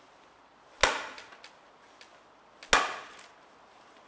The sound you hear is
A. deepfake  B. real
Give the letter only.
B